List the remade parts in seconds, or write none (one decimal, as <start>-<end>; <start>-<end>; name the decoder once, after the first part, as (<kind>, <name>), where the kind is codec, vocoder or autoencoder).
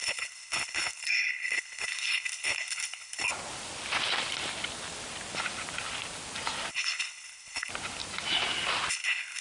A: 0.0-3.3 (codec, HILCodec); 6.7-7.7; 8.9-9.4